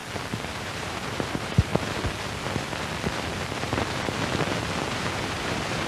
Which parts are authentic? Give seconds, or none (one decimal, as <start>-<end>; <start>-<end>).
0.0-0.6; 1.7-4.9

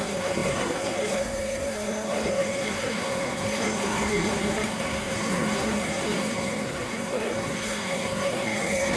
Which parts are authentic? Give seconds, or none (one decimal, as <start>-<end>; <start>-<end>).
none

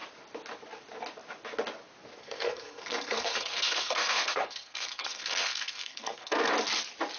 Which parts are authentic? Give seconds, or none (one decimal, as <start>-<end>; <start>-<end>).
0.0-2.2; 6.5-7.2